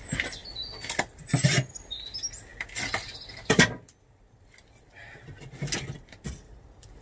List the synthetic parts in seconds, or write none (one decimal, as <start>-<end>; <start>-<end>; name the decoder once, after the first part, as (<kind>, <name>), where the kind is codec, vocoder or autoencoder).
none

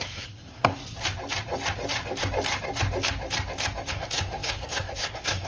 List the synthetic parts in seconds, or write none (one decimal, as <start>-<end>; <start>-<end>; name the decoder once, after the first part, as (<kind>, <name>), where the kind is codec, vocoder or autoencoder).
0.0-0.8 (codec, SNAC); 3.9-5.5

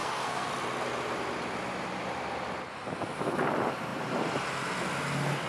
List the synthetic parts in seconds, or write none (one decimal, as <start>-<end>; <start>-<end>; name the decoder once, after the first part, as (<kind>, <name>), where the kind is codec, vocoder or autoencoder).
0.0-0.5 (codec, SNAC)

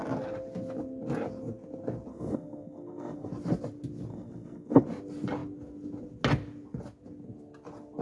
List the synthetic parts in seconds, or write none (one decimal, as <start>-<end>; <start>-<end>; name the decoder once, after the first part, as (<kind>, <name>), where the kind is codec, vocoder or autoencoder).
2.1-3.3 (codec, SNAC); 4.1-4.8

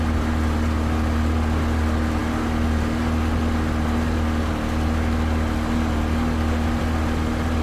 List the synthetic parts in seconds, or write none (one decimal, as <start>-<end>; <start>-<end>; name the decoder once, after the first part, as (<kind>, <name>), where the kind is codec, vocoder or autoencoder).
none